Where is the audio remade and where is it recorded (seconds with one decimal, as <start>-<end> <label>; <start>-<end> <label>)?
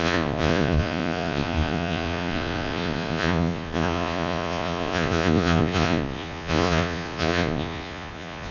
0.0-8.5 remade